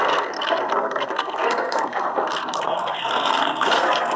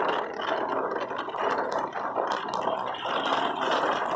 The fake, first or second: first